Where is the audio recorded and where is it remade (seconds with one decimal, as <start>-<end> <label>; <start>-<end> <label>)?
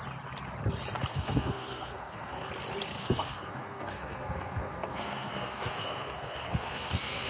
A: 0.0-1.1 recorded; 1.1-2.5 remade; 2.5-3.0 recorded; 3.0-7.3 remade